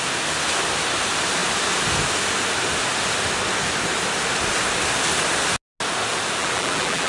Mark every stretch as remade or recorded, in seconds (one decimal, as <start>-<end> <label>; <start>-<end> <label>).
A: 0.0-6.4 recorded; 6.4-7.1 remade